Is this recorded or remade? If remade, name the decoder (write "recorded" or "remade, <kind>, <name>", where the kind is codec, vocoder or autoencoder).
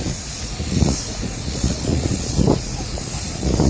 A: remade, vocoder, Vocos